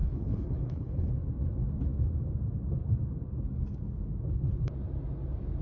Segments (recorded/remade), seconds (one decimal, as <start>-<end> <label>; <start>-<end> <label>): 0.0-1.1 remade; 1.1-5.6 recorded